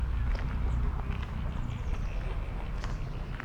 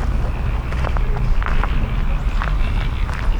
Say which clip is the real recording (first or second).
first